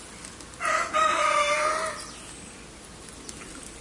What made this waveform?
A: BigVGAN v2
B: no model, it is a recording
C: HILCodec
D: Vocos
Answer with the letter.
B